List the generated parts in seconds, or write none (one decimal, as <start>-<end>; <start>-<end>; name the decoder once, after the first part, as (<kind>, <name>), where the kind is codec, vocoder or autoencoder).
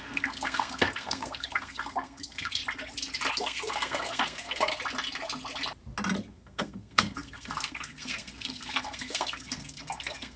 0.0-2.6 (codec, SNAC); 3.3-4.7; 6.3-10.4